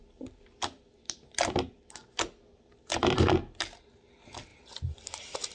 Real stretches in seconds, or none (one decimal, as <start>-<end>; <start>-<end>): 0.0-5.5